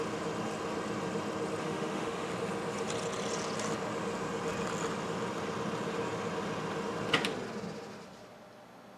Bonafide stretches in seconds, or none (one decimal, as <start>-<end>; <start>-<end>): 0.0-1.6; 2.3-9.0